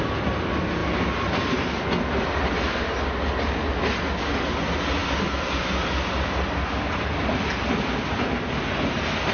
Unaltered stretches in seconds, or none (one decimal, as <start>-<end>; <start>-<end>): 0.0-9.3